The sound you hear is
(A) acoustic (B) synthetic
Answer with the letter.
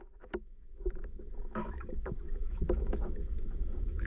B